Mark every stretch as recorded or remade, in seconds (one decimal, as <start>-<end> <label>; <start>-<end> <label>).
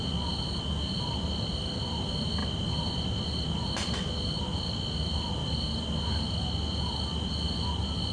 0.0-8.1 recorded